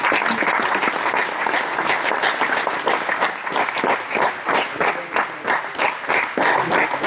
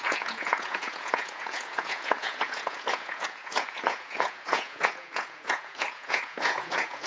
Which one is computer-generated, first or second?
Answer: second